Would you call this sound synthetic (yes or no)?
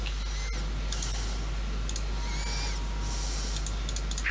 no